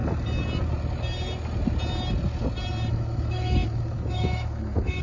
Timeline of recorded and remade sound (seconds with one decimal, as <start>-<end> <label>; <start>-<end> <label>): 0.0-2.9 recorded; 2.9-5.0 remade